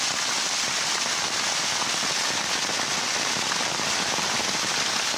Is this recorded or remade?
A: recorded